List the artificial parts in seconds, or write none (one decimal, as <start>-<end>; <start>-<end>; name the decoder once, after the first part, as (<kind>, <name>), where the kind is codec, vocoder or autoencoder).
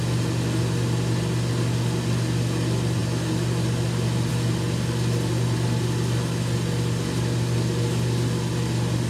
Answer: none